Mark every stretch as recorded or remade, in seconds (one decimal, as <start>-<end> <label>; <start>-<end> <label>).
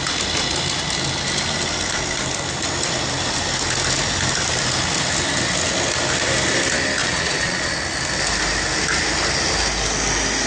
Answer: 0.0-7.0 recorded; 7.0-7.7 remade; 7.7-10.5 recorded